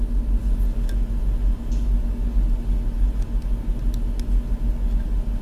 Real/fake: real